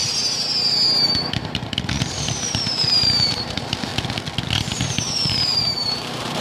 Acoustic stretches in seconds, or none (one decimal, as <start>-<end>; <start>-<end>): 0.0-2.0; 3.9-5.1